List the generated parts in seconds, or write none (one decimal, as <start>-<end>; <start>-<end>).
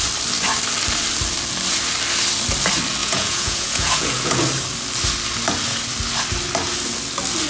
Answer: 3.0-4.4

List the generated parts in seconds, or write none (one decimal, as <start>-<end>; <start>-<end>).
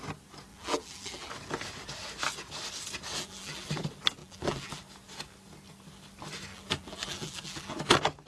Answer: 0.5-1.3; 3.1-3.7; 4.2-4.8; 6.5-7.8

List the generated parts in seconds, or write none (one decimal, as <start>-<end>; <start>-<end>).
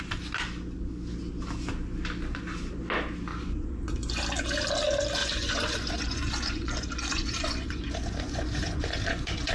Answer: 3.3-4.1; 5.2-9.5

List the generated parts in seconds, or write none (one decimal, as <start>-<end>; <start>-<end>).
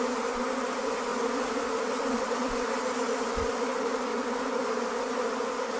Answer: 1.1-2.5; 4.1-5.8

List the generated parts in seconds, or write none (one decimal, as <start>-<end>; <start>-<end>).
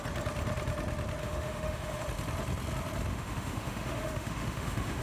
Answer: 1.2-2.0; 3.1-5.0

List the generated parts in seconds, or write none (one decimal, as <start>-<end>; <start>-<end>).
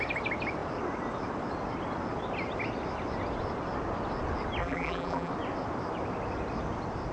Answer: 4.6-5.3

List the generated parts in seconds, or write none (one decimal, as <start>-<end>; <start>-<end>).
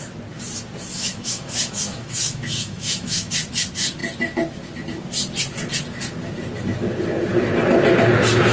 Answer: 0.9-3.3